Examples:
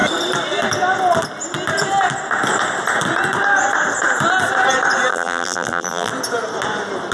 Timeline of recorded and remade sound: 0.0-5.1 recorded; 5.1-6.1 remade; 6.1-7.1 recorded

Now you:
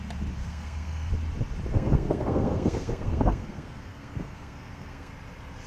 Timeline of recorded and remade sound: 0.0-0.4 recorded; 0.4-1.1 remade; 1.1-1.7 recorded; 1.7-5.1 remade; 5.1-5.7 recorded